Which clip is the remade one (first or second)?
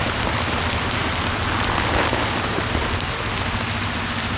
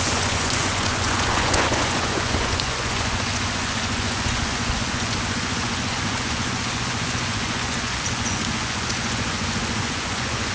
second